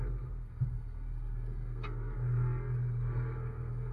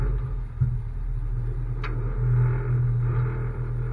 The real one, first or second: second